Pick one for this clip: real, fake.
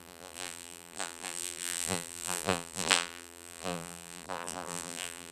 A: fake